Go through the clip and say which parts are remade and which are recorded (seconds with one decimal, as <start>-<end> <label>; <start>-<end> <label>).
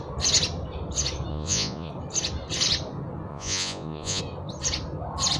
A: 0.0-1.3 recorded; 1.3-1.9 remade; 1.9-3.3 recorded; 3.3-4.2 remade; 4.2-5.4 recorded